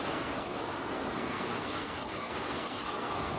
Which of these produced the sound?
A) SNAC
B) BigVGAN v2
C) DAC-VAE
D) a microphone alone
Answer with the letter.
A